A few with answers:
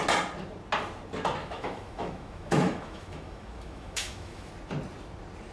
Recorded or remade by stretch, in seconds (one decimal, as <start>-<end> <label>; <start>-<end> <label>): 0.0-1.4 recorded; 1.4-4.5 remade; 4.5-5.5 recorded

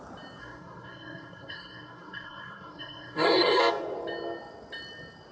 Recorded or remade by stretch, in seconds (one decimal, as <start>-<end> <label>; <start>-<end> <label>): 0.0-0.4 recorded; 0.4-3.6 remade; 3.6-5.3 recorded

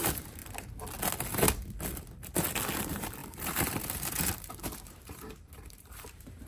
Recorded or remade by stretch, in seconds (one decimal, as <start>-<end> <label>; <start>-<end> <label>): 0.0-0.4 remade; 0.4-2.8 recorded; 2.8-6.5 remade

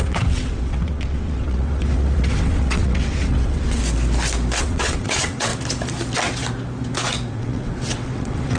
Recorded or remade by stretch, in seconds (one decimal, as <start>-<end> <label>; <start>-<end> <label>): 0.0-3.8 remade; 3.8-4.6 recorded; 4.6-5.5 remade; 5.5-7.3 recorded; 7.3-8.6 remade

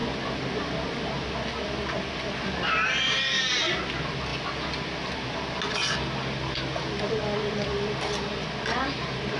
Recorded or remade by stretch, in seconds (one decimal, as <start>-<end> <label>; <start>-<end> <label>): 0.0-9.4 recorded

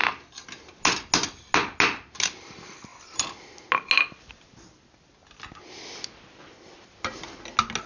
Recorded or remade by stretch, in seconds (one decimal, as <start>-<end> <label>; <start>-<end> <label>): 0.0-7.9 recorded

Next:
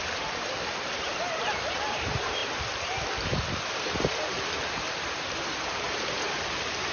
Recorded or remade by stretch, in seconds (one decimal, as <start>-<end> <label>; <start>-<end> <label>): 0.0-2.4 remade; 2.4-4.7 recorded; 4.7-6.9 remade